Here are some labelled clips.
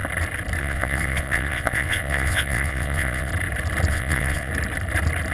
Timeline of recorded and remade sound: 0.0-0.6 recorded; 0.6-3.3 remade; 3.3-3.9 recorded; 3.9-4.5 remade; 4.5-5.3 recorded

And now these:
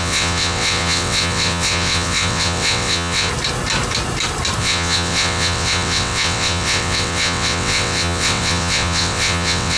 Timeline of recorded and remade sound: 0.0-3.3 remade; 3.3-4.6 recorded; 4.6-9.8 remade

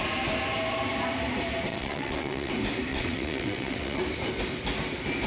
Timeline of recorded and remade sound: 0.0-1.7 recorded; 1.7-2.5 remade; 2.5-2.9 recorded; 2.9-4.0 remade; 4.0-5.3 recorded

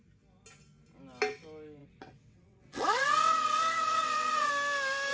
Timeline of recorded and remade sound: 0.0-1.8 recorded; 1.8-4.5 remade; 4.5-5.1 recorded

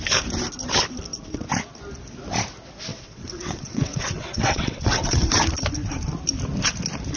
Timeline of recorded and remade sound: 0.0-2.9 recorded; 2.9-5.3 remade; 5.3-7.2 recorded

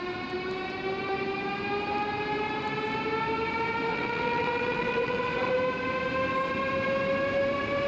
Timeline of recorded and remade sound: 0.0-3.9 recorded; 3.9-5.5 remade; 5.5-7.9 recorded

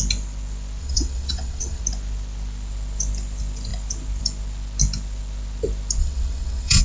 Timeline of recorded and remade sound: 0.0-0.8 recorded; 0.8-1.8 remade; 1.8-6.0 recorded; 6.0-6.8 remade

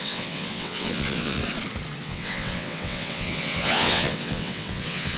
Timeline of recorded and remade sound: 0.0-1.4 remade; 1.4-2.0 recorded; 2.0-5.2 remade